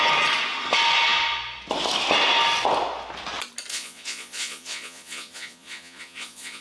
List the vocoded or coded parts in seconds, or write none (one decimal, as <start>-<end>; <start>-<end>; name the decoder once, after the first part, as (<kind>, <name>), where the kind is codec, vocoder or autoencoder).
3.7-6.6 (vocoder, Vocos)